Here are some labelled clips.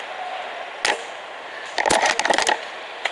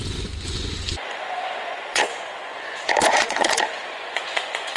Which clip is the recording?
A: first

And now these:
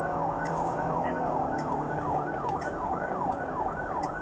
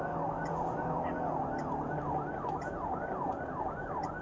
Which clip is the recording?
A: second